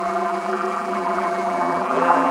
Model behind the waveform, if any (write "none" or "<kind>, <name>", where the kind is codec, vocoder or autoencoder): vocoder, BigVGAN v2